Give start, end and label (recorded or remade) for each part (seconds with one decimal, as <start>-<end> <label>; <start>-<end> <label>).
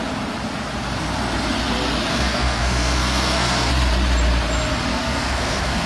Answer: 0.0-2.1 recorded; 2.1-3.7 remade; 3.7-4.9 recorded; 4.9-5.9 remade